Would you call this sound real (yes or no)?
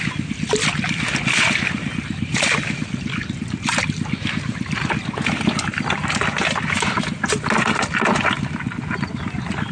yes